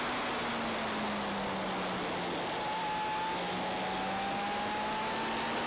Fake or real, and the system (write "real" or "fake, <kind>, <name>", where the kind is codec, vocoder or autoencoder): real